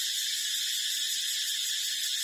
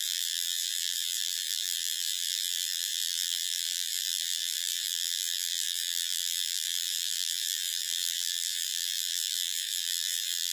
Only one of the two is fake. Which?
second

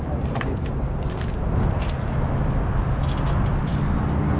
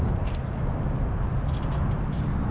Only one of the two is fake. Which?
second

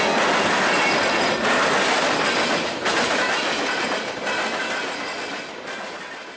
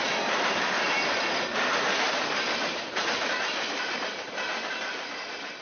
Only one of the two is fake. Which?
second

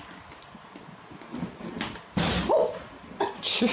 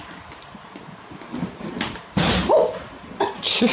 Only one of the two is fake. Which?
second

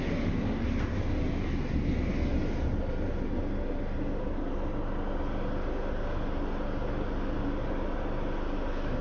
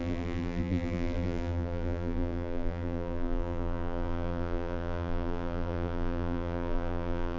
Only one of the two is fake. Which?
second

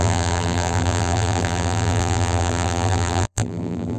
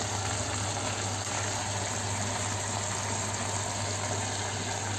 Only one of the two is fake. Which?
first